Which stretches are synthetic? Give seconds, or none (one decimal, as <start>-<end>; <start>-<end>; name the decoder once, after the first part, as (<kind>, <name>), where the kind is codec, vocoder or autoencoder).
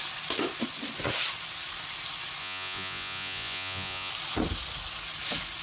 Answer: 2.4-4.1 (vocoder, Vocos)